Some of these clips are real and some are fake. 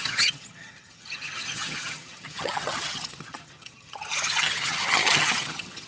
fake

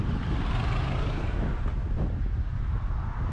real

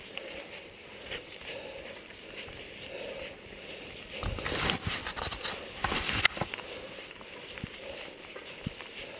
real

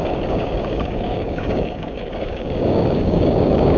fake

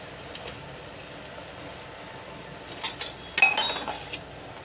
real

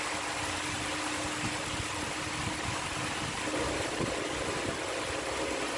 real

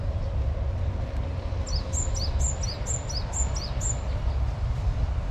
real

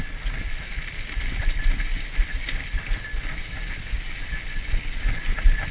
real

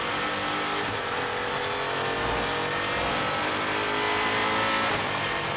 real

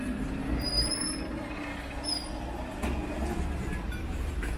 real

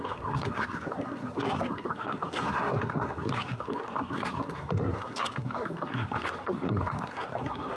fake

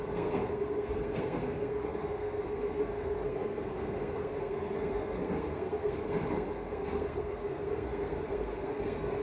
fake